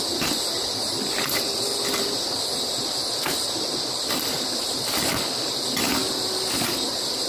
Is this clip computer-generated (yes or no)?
no